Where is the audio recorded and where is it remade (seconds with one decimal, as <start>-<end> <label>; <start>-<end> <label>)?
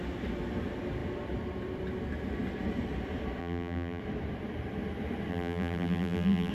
0.0-3.4 recorded; 3.4-4.0 remade; 4.0-5.3 recorded; 5.3-6.5 remade